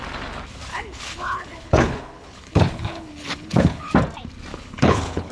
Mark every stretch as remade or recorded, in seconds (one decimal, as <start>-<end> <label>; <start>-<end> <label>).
0.0-0.7 recorded; 0.7-3.9 remade; 3.9-4.5 recorded; 4.5-5.3 remade